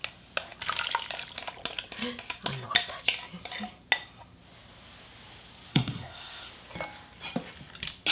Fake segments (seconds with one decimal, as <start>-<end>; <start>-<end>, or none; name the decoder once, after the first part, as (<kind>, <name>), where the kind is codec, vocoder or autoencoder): 5.7-6.5 (codec, SNAC)